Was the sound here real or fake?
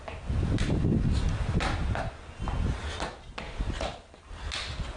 real